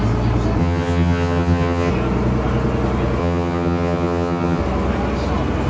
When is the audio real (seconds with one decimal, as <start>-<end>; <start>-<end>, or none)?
0.0-0.6; 1.9-3.2; 4.6-5.7